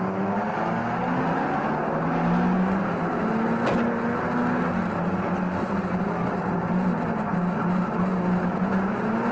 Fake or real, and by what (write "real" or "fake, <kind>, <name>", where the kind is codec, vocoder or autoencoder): real